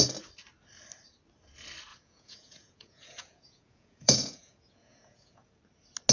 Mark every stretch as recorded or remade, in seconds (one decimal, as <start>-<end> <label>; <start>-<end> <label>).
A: 0.0-1.9 recorded; 1.9-5.6 remade; 5.6-6.1 recorded